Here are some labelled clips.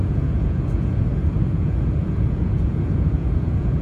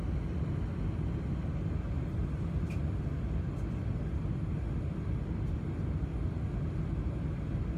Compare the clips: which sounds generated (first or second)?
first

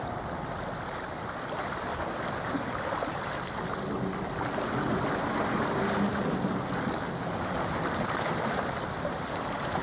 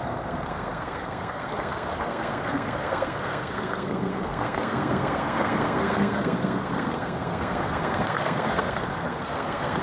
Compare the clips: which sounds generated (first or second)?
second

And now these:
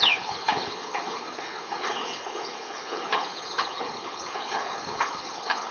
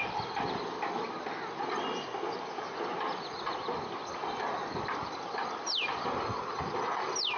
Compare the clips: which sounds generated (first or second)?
first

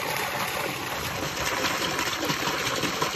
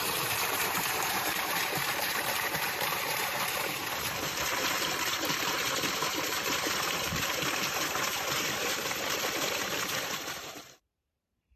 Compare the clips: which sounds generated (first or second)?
second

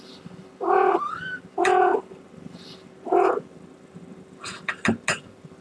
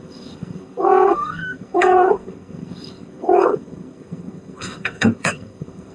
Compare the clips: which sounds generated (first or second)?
second